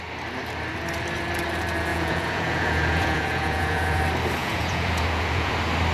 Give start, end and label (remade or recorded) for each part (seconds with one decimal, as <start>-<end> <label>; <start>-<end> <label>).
0.0-1.9 recorded; 1.9-4.0 remade; 4.0-4.4 recorded; 4.4-5.5 remade; 5.5-5.9 recorded